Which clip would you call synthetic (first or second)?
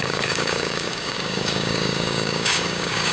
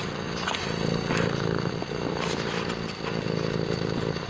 first